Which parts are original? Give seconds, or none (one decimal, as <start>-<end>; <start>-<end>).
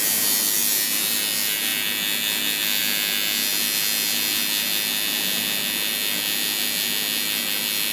0.0-7.9